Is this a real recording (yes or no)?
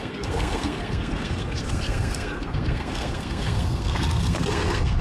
no